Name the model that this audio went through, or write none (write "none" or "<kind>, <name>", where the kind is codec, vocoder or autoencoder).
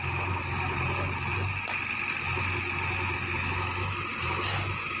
none